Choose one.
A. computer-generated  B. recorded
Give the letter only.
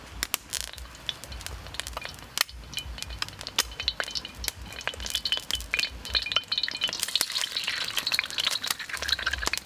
B